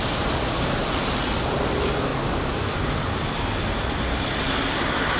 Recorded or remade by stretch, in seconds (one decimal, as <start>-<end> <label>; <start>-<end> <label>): 0.0-5.2 recorded